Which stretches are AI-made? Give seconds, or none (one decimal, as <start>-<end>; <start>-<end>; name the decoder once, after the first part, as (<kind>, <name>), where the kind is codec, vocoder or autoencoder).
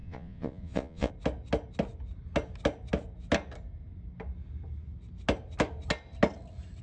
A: 0.0-1.1 (vocoder, Vocos)